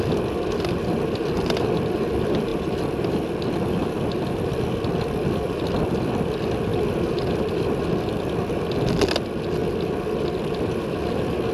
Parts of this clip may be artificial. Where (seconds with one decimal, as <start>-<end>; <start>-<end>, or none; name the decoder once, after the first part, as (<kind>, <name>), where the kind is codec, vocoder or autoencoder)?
2.5-4.1 (vocoder, BigVGAN v2); 6.7-7.8